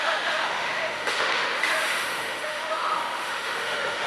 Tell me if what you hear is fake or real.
fake